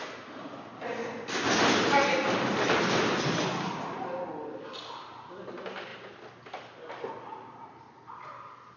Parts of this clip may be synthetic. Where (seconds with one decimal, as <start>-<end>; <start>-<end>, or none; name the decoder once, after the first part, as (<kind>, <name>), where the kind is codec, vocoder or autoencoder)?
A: none